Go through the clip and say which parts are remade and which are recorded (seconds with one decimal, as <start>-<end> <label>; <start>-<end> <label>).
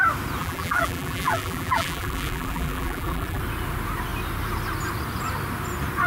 0.0-0.4 recorded; 0.4-3.4 remade; 3.4-6.1 recorded